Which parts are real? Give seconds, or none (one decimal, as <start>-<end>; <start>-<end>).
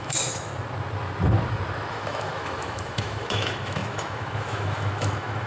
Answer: 0.5-1.9